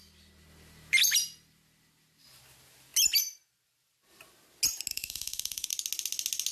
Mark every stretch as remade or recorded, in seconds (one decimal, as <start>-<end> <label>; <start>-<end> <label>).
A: 0.0-4.9 recorded; 4.9-5.7 remade; 5.7-6.5 recorded